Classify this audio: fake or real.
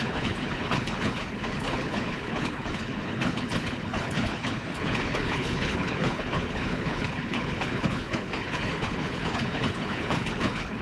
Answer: fake